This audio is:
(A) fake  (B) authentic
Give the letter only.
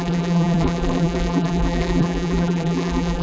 A